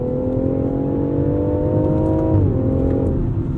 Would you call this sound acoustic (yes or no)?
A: yes